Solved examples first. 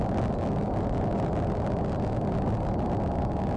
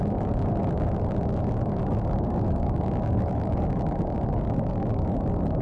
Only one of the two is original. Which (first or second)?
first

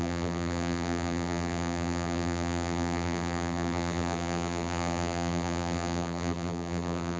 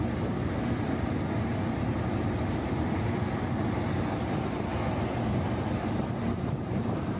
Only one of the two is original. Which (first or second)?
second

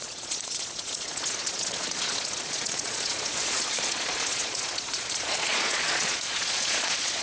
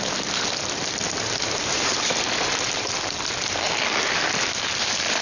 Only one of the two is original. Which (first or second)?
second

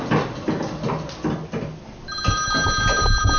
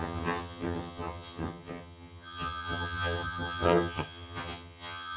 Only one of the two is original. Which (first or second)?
first